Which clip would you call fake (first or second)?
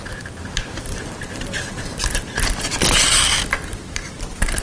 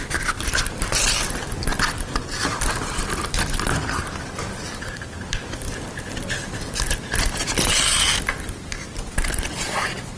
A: first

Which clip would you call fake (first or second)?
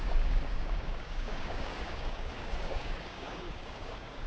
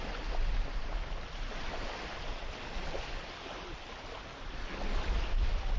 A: first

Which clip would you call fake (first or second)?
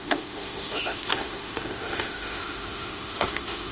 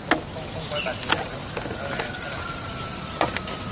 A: first